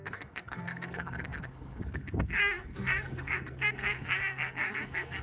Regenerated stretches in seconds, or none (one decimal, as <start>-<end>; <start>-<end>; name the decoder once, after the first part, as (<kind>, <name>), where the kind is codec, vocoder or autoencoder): 0.0-5.2 (codec, SNAC)

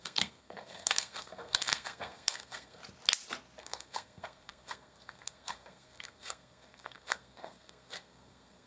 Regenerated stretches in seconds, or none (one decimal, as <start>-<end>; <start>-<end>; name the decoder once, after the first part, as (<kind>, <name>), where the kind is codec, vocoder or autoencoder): 0.0-2.8 (codec, SNAC); 3.6-8.7